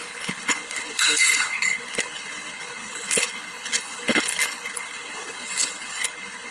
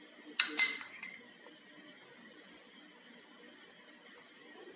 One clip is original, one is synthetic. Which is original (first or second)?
second